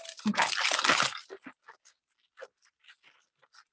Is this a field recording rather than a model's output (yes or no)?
yes